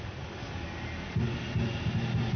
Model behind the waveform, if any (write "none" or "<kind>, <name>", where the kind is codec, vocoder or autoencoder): none